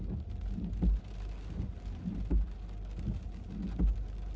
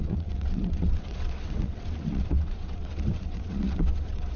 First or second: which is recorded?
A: first